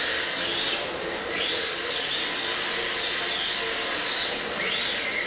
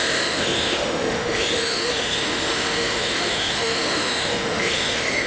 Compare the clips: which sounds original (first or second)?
first